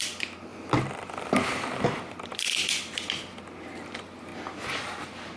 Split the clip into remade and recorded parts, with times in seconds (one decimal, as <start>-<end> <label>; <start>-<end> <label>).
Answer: 0.0-4.3 remade; 4.3-5.4 recorded